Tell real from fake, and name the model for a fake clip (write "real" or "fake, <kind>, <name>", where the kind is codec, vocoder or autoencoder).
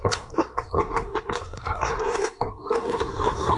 fake, codec, SNAC